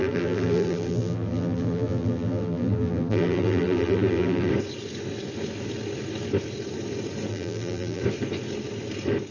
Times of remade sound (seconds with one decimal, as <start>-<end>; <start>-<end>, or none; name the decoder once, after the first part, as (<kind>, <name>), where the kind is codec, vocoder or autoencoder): 0.0-4.5 (vocoder, BigVGAN v2); 7.3-8.0